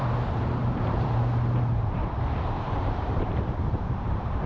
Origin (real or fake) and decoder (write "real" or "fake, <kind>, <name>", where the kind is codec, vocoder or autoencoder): fake, vocoder, BigVGAN v2